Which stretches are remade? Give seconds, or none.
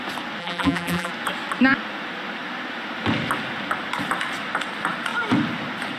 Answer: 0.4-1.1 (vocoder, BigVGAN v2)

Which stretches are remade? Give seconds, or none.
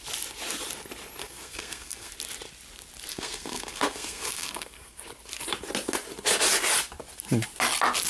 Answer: 1.2-2.1 (codec, SNAC); 3.1-5.0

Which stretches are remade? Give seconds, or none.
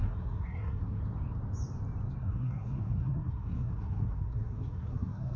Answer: 0.0-1.0 (codec, SNAC); 2.2-5.4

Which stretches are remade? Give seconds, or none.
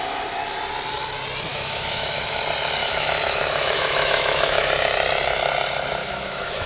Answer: 1.5-2.4 (autoencoder, DAC-VAE); 2.8-4.7; 6.0-6.7